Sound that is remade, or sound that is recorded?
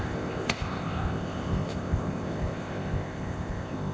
remade